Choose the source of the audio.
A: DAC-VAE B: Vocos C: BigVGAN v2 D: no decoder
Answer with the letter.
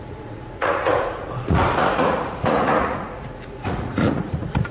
B